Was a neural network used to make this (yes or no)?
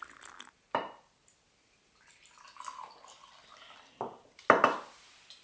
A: no